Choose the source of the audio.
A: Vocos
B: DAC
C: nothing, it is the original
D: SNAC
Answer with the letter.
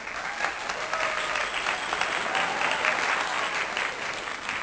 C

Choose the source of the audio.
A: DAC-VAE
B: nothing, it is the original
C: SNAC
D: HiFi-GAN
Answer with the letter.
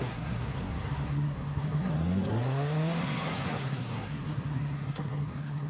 C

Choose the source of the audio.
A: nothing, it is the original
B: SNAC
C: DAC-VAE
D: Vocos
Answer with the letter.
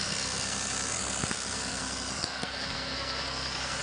B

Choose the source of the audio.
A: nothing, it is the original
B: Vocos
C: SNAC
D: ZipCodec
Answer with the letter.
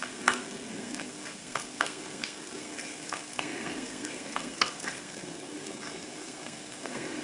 C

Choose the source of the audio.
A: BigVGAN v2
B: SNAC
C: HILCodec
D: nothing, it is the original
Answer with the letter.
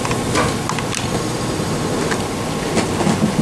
D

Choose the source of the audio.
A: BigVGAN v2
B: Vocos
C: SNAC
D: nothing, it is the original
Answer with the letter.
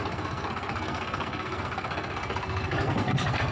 C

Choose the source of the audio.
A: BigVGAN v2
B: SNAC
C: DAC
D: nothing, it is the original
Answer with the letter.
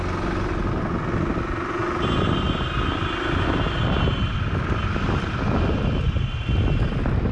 D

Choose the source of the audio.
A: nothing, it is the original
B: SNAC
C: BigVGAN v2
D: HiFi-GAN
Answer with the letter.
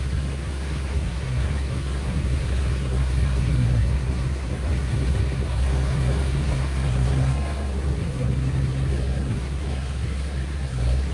B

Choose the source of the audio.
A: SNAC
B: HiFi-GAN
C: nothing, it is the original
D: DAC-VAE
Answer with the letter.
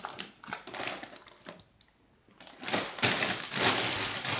C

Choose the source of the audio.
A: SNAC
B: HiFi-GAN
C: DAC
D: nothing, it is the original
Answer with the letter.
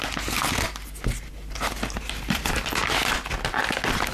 D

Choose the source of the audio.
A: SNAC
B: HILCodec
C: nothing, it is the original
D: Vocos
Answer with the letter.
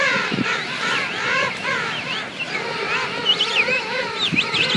C